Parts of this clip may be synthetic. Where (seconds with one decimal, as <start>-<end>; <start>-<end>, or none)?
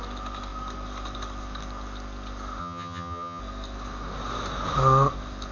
2.6-3.4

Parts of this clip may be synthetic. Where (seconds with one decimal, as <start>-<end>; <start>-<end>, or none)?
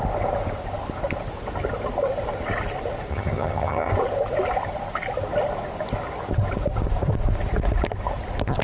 3.1-3.9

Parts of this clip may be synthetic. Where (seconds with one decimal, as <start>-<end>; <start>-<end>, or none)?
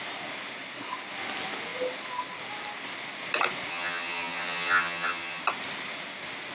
3.7-5.4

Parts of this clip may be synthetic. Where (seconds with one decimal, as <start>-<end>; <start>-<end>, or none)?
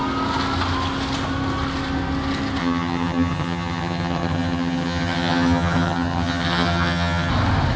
2.6-7.3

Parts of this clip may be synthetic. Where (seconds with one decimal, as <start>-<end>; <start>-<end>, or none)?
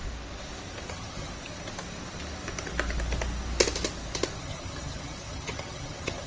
0.9-1.3; 4.4-6.3